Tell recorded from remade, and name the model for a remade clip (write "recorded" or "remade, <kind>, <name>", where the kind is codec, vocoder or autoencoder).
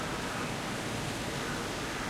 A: recorded